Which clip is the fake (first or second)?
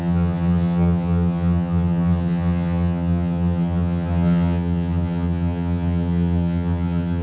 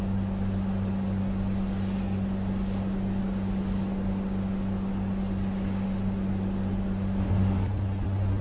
first